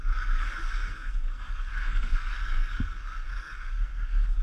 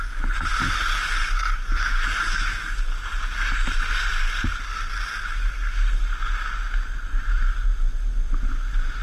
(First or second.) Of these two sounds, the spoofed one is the first